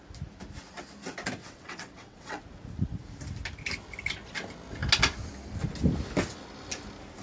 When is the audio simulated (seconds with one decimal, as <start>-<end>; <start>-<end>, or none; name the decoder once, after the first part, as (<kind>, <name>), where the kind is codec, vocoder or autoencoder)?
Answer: 1.4-2.4 (vocoder, WaveNeXt)

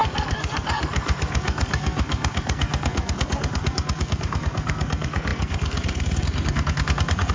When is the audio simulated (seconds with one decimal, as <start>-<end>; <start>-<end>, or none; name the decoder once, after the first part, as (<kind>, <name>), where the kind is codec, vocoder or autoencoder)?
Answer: 0.0-7.3 (codec, SNAC)

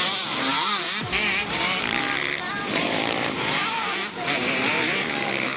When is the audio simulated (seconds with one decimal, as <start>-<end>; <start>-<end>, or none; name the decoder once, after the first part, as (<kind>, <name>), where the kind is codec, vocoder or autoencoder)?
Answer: 0.0-5.6 (vocoder, BigVGAN v2)

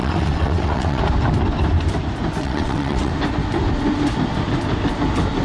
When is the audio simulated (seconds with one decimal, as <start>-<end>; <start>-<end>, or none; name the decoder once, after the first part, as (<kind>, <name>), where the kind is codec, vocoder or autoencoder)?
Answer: 0.0-1.0 (vocoder, WaveNeXt); 2.4-3.1

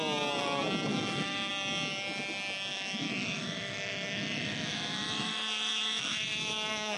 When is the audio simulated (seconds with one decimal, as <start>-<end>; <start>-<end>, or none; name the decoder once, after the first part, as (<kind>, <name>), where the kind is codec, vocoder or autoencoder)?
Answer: 0.9-1.5 (autoencoder, DAC-VAE); 2.7-7.0

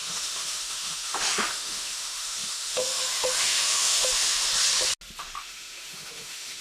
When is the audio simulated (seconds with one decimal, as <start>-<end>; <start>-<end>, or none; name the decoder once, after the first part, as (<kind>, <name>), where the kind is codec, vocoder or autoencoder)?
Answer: 0.0-4.5 (autoencoder, DAC-VAE); 5.2-6.6